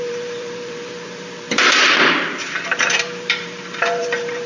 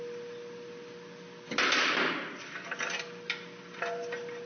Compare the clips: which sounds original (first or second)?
second